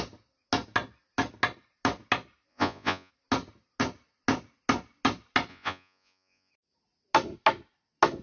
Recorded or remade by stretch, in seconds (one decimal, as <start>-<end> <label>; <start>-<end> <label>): 0.0-2.5 recorded; 2.5-3.1 remade; 3.1-5.5 recorded; 5.5-6.5 remade; 6.5-8.2 recorded